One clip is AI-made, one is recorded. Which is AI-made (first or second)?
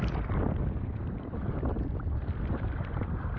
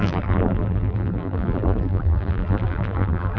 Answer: second